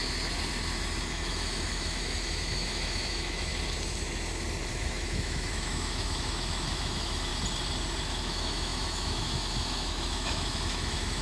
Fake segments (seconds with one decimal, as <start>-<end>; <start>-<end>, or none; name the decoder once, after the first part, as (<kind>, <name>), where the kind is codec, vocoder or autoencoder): 1.1-3.5 (autoencoder, DAC-VAE); 4.7-7.3; 8.0-11.2